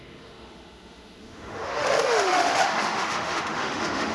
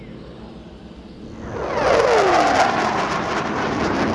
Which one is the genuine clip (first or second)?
second